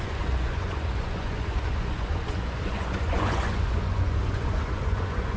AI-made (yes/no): yes